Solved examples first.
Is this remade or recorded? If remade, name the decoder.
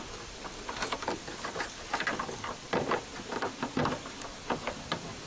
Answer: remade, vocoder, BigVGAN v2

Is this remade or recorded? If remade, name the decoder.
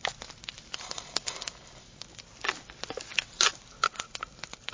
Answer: recorded